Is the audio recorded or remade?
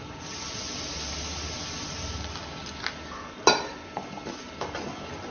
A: recorded